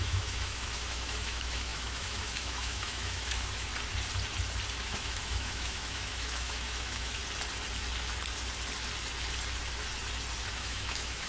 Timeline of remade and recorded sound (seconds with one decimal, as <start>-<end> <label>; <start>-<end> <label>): 0.0-3.7 remade; 3.7-4.7 recorded; 4.7-7.2 remade; 7.2-10.5 recorded; 10.5-11.3 remade